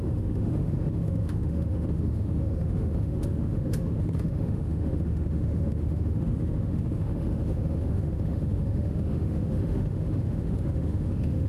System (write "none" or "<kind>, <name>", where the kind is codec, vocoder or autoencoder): autoencoder, DAC-VAE